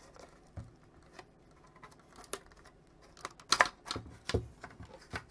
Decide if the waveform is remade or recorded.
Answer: recorded